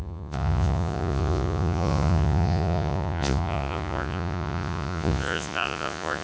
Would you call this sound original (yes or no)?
no